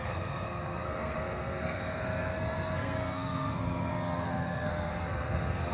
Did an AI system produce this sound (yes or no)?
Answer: yes